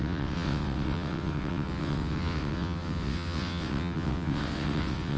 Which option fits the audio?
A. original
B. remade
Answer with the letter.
B